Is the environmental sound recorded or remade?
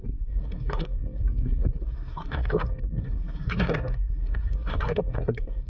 remade